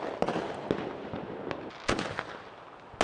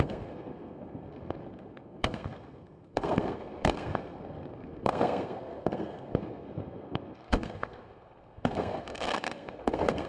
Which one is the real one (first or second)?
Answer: first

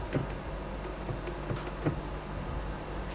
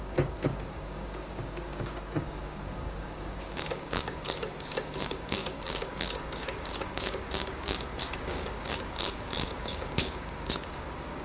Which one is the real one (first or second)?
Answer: first